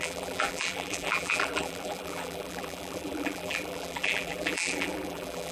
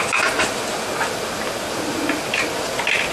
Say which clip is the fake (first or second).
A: first